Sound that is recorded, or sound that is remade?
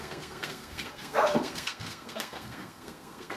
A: remade